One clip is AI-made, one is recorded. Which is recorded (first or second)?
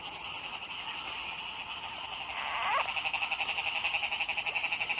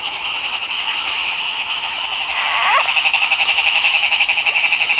first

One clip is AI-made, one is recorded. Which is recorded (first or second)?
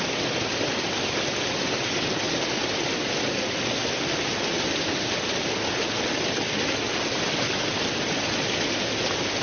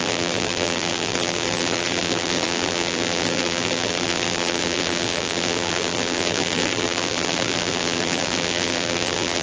first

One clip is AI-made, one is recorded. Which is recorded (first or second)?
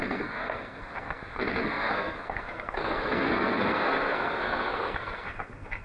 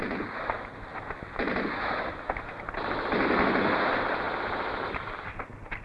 second